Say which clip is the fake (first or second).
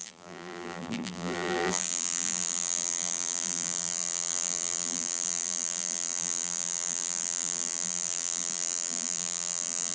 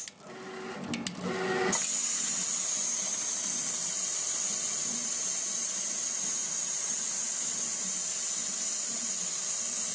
first